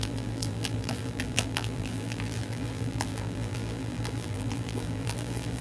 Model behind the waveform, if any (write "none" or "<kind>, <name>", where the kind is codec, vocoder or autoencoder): vocoder, BigVGAN v2